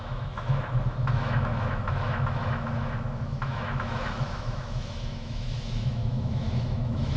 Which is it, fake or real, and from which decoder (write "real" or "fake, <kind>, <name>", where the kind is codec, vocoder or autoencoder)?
fake, autoencoder, DAC-VAE